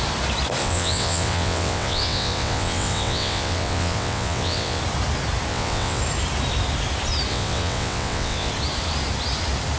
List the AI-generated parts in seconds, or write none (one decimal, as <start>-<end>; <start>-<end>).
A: 0.6-4.8; 5.5-6.0; 7.3-8.5